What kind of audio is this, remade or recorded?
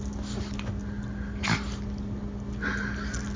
recorded